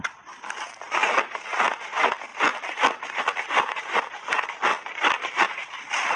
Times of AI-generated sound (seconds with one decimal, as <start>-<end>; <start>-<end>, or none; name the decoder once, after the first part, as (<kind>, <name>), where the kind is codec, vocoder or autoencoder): none